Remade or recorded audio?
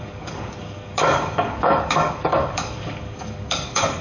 remade